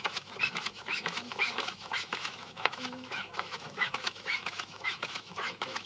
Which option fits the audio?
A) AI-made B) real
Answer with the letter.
A